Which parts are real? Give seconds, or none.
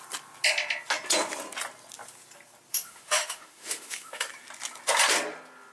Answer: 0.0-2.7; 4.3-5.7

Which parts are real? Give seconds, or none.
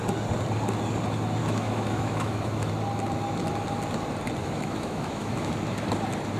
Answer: 0.0-1.4; 2.7-4.4; 5.5-6.4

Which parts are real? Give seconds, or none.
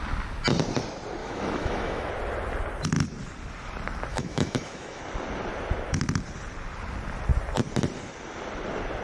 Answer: 0.0-1.2; 2.1-4.1; 5.0-9.0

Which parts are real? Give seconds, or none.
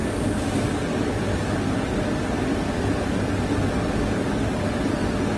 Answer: 0.0-5.4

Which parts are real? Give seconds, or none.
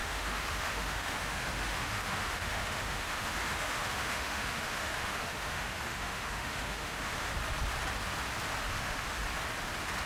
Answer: 7.3-8.7; 9.2-10.1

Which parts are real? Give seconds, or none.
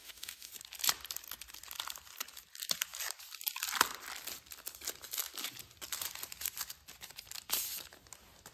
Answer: 0.5-8.5